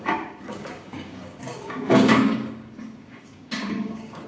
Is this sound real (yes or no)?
no